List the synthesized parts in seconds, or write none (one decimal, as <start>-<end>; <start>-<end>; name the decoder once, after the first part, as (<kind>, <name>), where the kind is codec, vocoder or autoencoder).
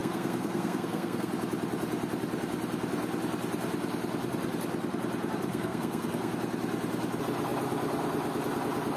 0.0-1.3 (codec, SNAC); 5.5-6.3